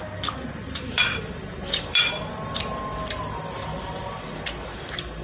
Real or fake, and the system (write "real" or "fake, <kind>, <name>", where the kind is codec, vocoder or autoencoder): fake, vocoder, BigVGAN v2